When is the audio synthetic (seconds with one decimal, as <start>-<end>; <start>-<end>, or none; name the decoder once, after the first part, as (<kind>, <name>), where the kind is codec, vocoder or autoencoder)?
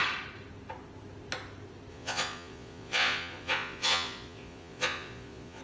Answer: 1.9-5.6 (vocoder, Vocos)